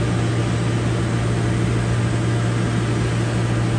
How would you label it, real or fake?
real